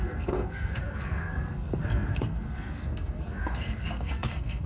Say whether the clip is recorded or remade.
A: remade